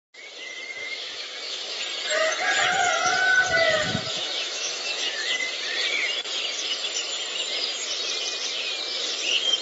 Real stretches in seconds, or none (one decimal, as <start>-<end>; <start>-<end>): 0.0-0.8; 1.8-4.1; 5.3-9.6